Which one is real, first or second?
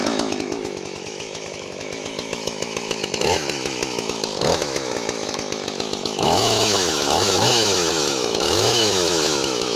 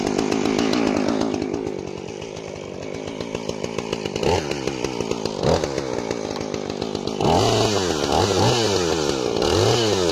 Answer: second